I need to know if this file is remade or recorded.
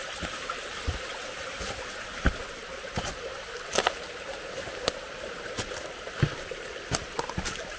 recorded